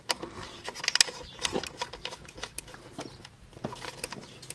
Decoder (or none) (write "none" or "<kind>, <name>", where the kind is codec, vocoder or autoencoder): none